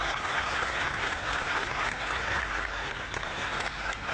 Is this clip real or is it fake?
fake